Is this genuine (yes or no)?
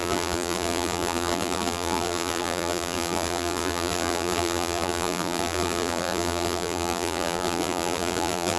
no